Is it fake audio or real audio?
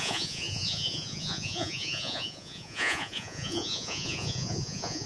fake